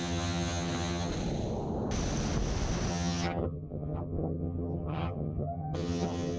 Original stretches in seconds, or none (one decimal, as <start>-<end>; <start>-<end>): 1.1-2.9